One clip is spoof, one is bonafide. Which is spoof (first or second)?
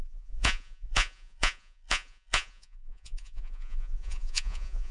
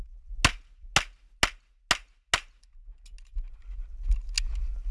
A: first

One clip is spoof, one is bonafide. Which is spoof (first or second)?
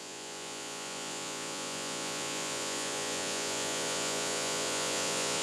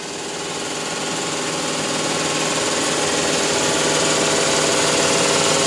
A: first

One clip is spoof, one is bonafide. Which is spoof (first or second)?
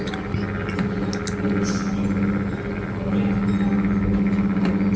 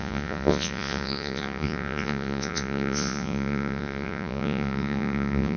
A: second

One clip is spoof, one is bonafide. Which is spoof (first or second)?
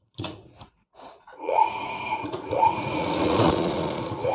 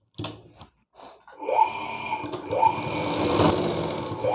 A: first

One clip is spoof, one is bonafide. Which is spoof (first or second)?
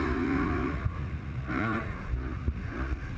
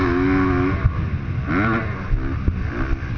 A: first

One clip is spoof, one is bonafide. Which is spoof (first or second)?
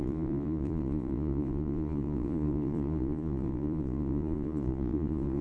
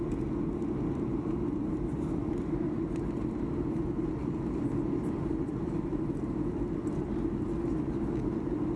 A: first